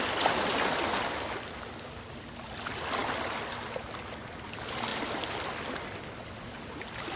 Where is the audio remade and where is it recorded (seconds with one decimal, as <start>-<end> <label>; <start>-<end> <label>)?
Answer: 0.0-7.2 recorded